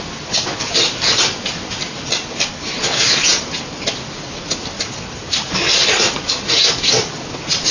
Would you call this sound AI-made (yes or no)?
no